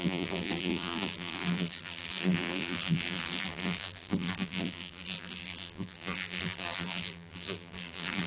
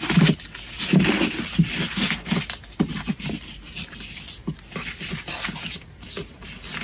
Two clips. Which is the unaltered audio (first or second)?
second